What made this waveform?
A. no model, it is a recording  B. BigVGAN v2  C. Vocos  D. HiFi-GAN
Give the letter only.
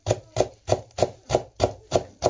A